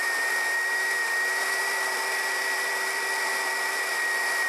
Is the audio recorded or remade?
remade